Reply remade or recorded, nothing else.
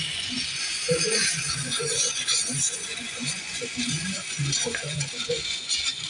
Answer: remade